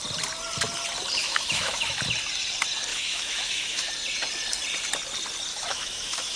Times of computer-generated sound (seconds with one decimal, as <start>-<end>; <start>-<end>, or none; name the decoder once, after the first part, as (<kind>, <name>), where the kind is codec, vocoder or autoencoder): 1.2-2.0 (autoencoder, DAC-VAE); 2.9-3.9; 5.5-6.4